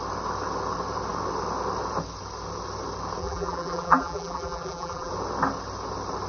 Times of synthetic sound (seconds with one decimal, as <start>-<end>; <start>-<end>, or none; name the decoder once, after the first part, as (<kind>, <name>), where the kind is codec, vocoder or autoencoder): 3.2-5.1 (vocoder, BigVGAN v2)